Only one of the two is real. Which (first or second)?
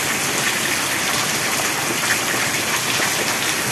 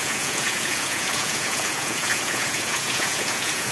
first